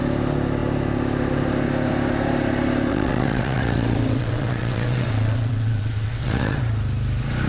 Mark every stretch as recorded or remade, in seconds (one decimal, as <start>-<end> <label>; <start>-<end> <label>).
0.0-2.9 recorded; 2.9-6.6 remade; 6.6-7.5 recorded

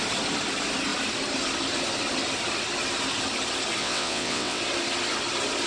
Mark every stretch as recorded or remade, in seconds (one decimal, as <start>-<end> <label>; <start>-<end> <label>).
0.0-3.8 recorded; 3.8-4.6 remade; 4.6-5.7 recorded

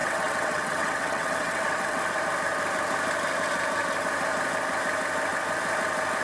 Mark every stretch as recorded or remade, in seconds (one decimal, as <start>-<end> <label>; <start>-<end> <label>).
0.0-2.0 remade; 2.0-6.2 recorded

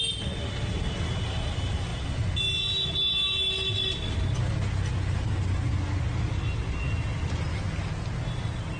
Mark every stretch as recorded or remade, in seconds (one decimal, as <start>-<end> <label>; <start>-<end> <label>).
0.0-8.8 recorded

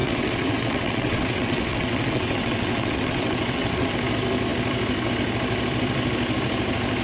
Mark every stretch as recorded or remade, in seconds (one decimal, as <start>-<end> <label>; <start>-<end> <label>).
0.0-3.9 remade; 3.9-7.0 recorded

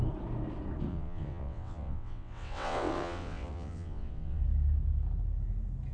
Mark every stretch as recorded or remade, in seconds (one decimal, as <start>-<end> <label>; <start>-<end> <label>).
0.0-0.9 recorded; 0.9-4.4 remade; 4.4-5.9 recorded

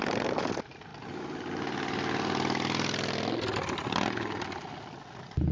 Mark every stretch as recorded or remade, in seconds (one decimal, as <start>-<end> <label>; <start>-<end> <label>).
0.0-5.5 recorded